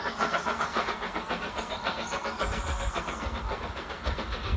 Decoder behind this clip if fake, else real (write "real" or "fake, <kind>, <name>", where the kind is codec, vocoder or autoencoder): fake, codec, SNAC